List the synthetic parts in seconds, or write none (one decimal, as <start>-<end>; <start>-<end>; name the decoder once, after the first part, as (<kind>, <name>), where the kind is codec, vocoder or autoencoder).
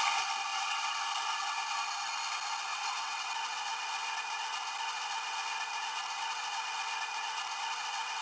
0.5-1.0 (vocoder, WaveNeXt); 2.7-3.3